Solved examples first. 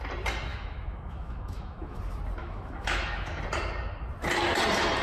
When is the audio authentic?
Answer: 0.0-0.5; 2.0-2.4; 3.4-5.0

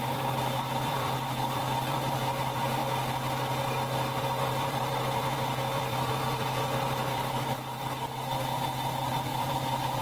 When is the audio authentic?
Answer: 2.8-4.2

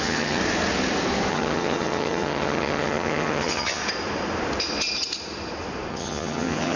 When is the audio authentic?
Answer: 0.4-1.3; 3.8-5.9

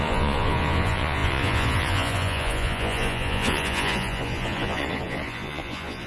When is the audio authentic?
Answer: none

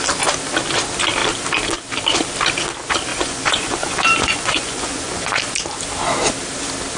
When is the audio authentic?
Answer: 0.0-3.1; 5.4-7.0

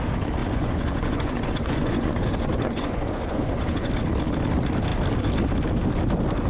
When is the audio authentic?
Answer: 0.0-0.4; 3.9-6.5

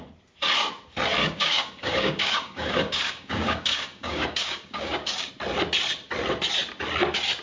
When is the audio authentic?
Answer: 0.0-1.2; 5.3-7.4